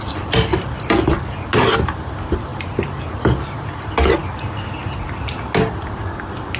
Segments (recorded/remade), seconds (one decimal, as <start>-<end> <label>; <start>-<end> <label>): 0.0-2.5 recorded; 2.5-3.0 remade; 3.0-6.6 recorded